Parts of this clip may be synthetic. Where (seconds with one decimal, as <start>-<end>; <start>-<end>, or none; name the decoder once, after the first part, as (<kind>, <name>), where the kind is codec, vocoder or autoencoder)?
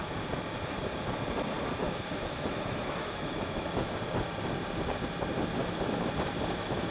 1.8-3.9 (autoencoder, DAC-VAE); 5.6-6.1